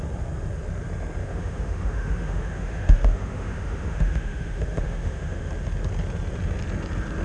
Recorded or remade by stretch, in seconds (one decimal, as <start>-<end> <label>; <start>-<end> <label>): 0.0-1.2 recorded; 1.2-5.5 remade; 5.5-7.2 recorded